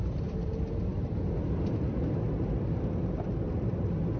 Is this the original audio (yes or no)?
no